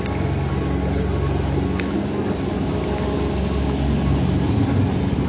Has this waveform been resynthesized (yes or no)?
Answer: no